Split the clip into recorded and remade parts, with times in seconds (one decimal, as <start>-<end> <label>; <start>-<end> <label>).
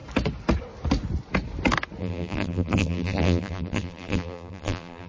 0.0-2.0 recorded; 2.0-5.1 remade